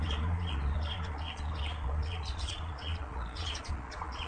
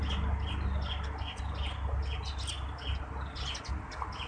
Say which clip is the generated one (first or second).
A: first